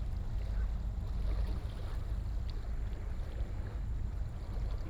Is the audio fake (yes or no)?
no